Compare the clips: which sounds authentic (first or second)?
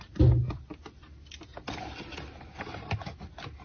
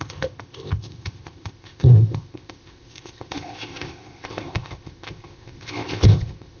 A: first